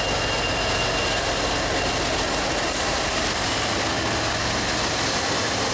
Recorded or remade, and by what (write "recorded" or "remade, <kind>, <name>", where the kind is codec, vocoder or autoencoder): recorded